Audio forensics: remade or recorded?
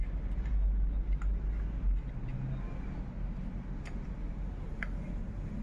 recorded